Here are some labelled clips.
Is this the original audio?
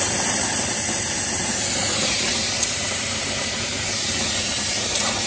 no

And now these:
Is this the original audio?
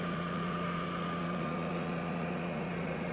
no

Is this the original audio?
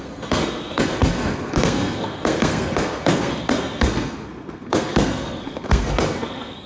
no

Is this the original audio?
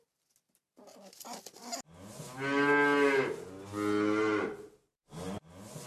yes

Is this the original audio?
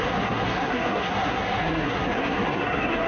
no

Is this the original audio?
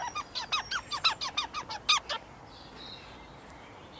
yes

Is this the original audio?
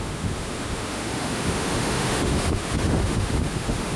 no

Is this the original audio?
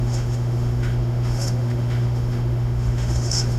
no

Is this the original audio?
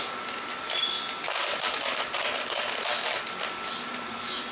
yes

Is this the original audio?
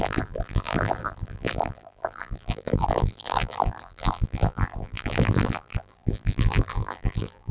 no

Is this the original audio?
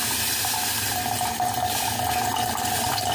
yes